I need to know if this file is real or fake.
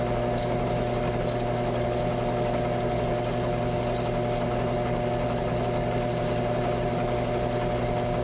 real